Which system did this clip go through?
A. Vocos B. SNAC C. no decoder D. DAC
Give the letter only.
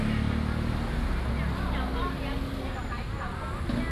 C